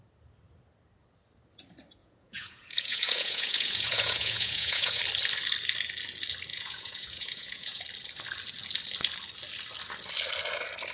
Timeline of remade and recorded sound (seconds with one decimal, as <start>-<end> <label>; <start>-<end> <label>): 0.0-2.0 recorded; 2.0-5.0 remade; 5.0-6.5 recorded; 6.5-7.8 remade; 7.8-10.9 recorded